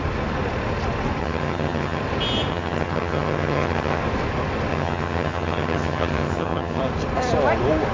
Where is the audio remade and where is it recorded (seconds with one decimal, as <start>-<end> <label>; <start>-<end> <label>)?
0.0-1.2 recorded; 1.2-2.0 remade; 2.0-2.5 recorded; 2.5-4.0 remade; 4.0-4.7 recorded; 4.7-6.8 remade; 6.8-7.9 recorded